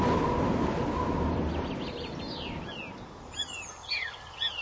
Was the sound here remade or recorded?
recorded